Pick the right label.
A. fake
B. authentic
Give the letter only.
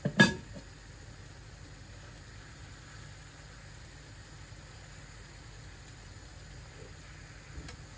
B